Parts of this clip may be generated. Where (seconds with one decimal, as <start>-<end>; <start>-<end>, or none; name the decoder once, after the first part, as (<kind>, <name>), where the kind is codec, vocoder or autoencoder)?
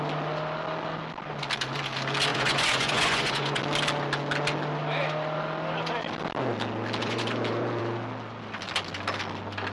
2.3-3.6 (vocoder, Vocos); 7.0-7.8